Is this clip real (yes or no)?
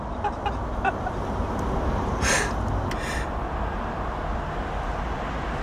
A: yes